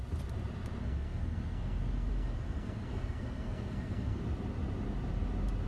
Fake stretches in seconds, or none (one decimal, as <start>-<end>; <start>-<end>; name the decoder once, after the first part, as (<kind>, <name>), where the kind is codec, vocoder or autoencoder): 0.8-4.2 (codec, SNAC)

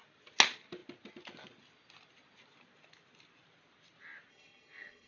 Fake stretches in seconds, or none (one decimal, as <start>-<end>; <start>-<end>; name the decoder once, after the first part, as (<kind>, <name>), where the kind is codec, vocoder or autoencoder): 4.3-5.1 (codec, SNAC)

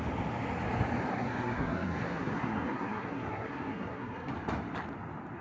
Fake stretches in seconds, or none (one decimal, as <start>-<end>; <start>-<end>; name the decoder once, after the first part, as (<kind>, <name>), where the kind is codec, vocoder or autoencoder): 1.1-4.3 (codec, SNAC)